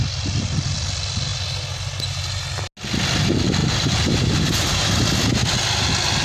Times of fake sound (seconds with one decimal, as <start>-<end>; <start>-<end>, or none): 3.6-5.0